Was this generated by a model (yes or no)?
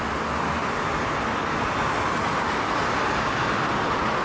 no